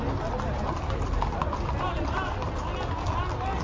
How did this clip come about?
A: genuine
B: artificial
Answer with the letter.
A